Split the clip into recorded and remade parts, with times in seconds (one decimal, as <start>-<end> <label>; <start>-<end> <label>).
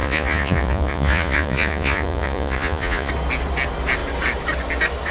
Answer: 0.0-3.1 remade; 3.1-5.1 recorded